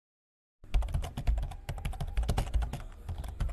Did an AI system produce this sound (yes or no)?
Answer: no